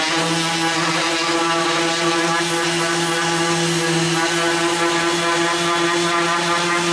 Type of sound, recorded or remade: recorded